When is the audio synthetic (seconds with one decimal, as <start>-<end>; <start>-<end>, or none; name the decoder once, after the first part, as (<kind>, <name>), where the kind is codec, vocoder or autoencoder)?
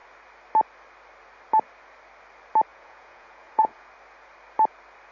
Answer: 2.7-3.9 (vocoder, Vocos)